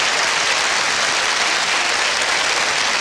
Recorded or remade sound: recorded